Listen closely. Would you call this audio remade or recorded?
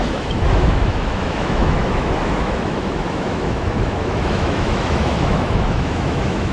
remade